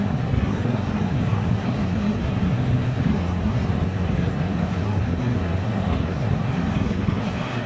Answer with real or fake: fake